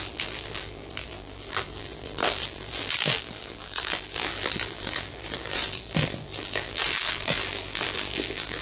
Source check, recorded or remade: remade